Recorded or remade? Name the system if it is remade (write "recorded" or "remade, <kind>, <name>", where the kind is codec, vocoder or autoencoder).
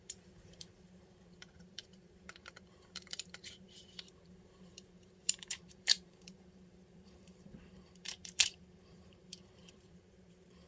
remade, vocoder, BigVGAN v2